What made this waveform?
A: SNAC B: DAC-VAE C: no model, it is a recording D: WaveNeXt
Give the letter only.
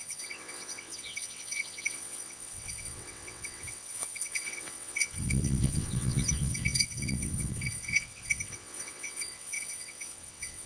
D